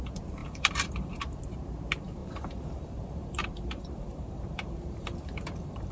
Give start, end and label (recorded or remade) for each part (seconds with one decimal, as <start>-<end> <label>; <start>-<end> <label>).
0.0-0.4 recorded; 0.4-1.4 remade; 1.4-2.2 recorded; 2.2-5.9 remade